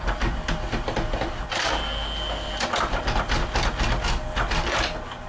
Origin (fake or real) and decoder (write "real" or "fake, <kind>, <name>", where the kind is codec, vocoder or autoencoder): real